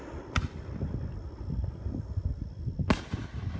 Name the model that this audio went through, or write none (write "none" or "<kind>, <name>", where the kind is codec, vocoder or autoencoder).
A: none